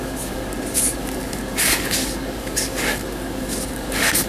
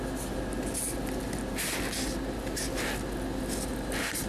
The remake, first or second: first